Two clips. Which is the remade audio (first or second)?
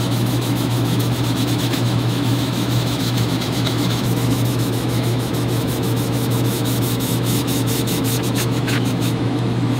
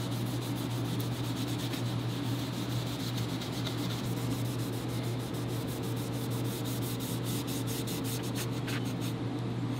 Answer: first